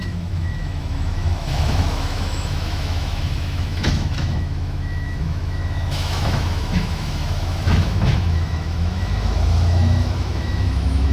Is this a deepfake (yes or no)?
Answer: yes